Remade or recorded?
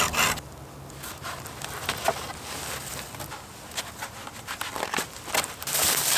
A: recorded